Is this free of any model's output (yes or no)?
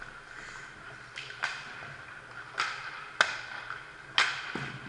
yes